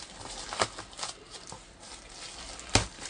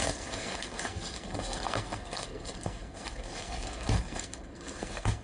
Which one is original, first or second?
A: first